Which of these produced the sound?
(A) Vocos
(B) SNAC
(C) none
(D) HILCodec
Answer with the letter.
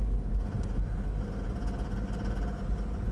C